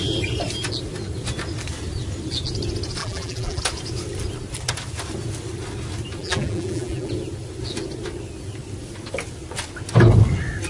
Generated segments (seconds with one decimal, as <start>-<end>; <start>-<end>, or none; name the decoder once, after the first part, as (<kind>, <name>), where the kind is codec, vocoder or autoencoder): 3.0-3.6 (vocoder, BigVGAN v2); 6.2-7.1